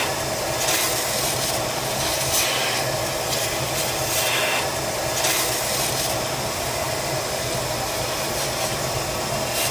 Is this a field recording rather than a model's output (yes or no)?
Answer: yes